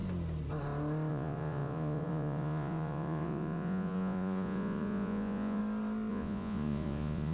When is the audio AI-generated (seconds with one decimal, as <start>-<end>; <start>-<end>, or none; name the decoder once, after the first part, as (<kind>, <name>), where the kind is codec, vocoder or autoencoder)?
1.1-5.6 (vocoder, Vocos); 6.1-7.3